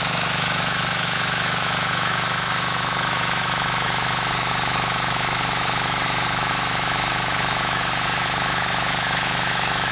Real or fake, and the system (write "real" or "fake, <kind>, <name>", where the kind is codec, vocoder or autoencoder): fake, autoencoder, DAC-VAE